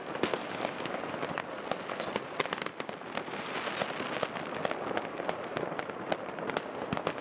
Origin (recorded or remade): recorded